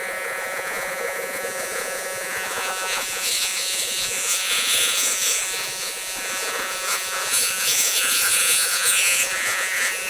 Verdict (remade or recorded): remade